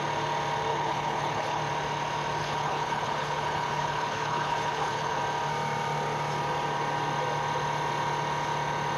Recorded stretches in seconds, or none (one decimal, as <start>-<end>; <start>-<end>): 0.0-0.7; 1.6-2.4; 5.2-9.0